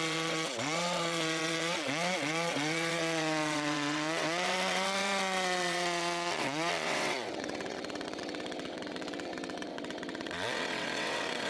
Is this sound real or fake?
fake